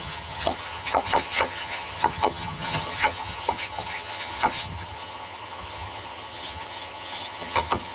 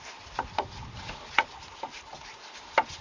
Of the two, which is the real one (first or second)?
second